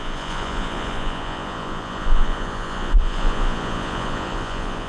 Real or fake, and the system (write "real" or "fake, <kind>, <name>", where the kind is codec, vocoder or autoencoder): fake, vocoder, Vocos